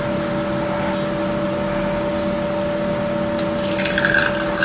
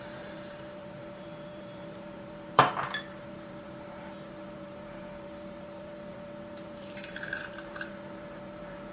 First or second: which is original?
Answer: first